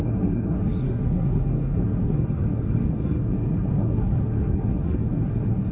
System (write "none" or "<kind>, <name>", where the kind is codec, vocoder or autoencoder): codec, SNAC